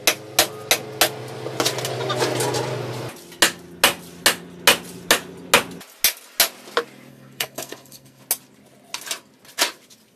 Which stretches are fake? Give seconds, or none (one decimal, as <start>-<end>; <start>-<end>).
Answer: 7.1-8.2